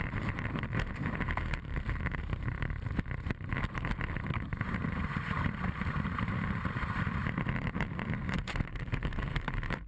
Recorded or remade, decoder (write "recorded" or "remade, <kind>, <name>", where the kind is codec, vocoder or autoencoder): remade, vocoder, BigVGAN v2